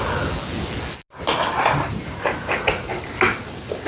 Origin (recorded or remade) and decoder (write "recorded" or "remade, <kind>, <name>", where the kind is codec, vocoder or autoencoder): recorded